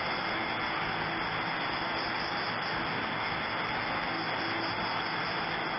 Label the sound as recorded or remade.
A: recorded